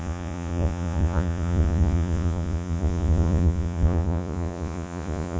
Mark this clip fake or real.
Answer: fake